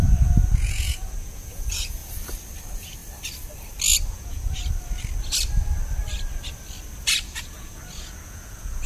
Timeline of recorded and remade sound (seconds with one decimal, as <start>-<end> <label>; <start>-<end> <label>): 0.0-2.0 remade; 2.0-2.6 recorded; 2.6-3.0 remade; 3.0-4.1 recorded; 4.1-4.6 remade; 4.6-7.1 recorded; 7.1-8.9 remade

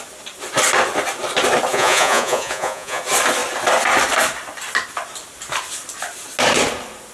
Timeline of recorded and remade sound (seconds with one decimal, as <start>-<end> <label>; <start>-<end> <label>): 0.0-1.7 recorded; 1.7-3.0 remade; 3.0-7.1 recorded

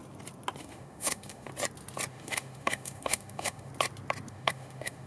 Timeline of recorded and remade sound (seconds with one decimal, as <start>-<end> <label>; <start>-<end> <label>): 0.0-0.6 recorded; 0.6-1.5 remade; 1.5-2.1 recorded; 2.1-3.7 remade; 3.7-4.3 recorded; 4.3-5.1 remade

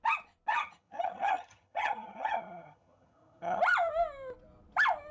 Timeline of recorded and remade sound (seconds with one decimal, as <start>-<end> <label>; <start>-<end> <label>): 0.0-0.5 recorded; 0.5-3.6 remade; 3.6-5.1 recorded

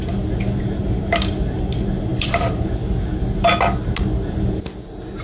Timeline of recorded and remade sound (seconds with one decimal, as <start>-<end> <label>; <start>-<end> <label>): 0.0-2.1 recorded; 2.1-2.8 remade; 2.8-5.2 recorded

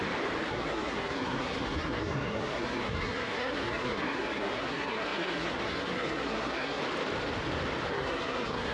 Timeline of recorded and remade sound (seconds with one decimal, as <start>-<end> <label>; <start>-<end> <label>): 0.0-0.5 recorded; 0.5-6.8 remade; 6.8-7.9 recorded; 7.9-8.7 remade

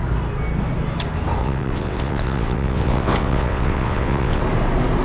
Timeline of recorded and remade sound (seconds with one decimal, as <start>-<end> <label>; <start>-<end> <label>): 0.0-1.4 recorded; 1.4-4.4 remade; 4.4-5.0 recorded

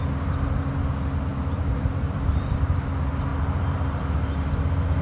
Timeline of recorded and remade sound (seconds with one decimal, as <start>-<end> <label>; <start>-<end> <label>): 0.0-1.3 recorded; 1.3-2.5 remade; 2.5-5.0 recorded